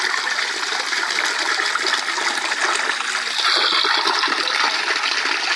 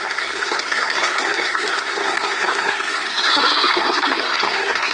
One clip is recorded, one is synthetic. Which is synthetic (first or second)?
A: second